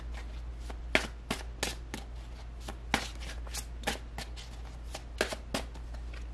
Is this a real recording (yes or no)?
yes